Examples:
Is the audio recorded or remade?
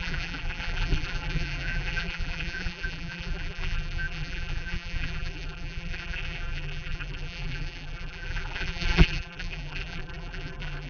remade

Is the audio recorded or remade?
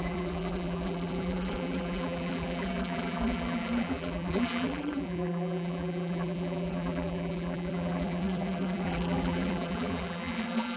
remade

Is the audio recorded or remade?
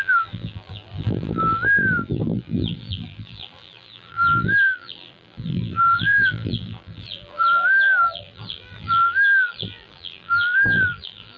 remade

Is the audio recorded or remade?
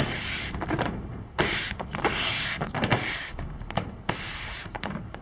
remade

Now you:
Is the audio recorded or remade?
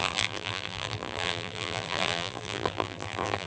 remade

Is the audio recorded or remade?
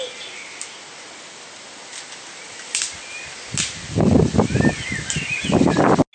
recorded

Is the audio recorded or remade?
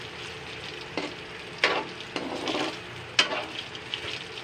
recorded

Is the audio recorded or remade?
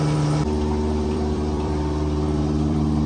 remade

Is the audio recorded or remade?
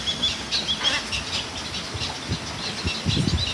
recorded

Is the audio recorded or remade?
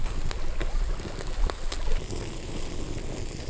recorded